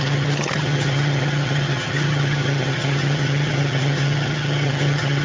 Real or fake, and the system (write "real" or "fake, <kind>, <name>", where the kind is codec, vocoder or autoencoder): fake, vocoder, HiFi-GAN